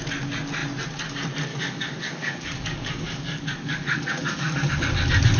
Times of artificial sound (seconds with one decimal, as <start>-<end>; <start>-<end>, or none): 1.5-4.7